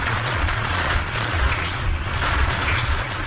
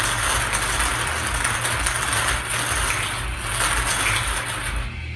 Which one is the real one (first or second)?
second